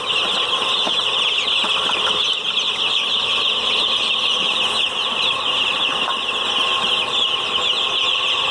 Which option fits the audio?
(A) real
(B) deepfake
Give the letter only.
A